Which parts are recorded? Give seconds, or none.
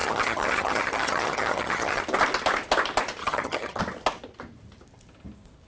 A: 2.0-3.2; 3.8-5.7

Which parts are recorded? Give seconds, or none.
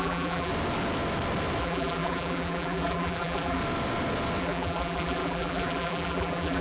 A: 0.5-1.6; 3.6-4.4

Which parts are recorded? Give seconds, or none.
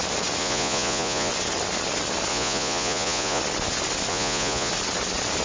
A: 0.0-0.4; 1.3-2.3; 3.4-4.1; 4.7-5.4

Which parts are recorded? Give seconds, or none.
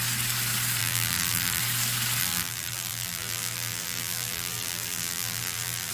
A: 0.0-0.8; 1.6-2.2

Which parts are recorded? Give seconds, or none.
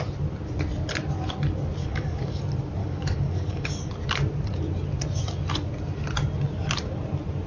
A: 0.0-1.8; 2.4-2.8; 3.9-7.5